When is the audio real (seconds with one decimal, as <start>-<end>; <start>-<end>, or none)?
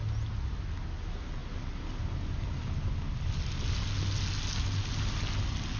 0.0-5.8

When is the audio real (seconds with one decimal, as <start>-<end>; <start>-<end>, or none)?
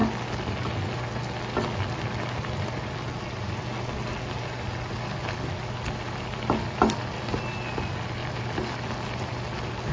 0.0-9.9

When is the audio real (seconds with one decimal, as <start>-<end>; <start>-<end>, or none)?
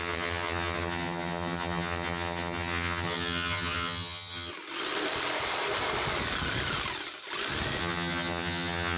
4.5-7.8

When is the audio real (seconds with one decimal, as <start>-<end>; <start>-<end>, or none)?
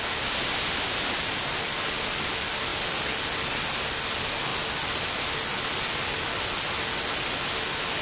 0.0-8.0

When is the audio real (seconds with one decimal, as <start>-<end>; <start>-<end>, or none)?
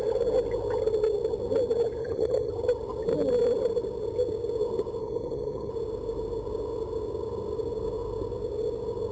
0.0-2.0; 2.5-5.0; 5.7-9.1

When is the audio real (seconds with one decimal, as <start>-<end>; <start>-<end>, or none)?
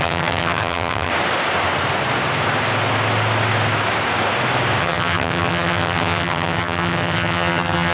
1.1-4.8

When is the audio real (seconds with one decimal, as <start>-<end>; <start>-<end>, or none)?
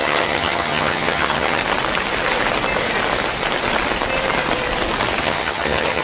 1.6-5.2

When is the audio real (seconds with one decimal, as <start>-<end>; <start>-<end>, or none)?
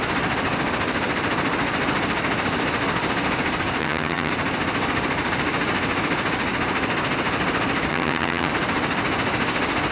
0.0-3.8; 4.3-7.9; 8.5-9.9